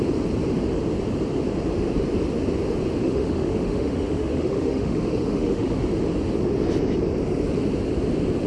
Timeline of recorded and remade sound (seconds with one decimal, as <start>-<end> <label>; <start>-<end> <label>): 0.0-3.0 recorded; 3.0-5.8 remade; 5.8-8.5 recorded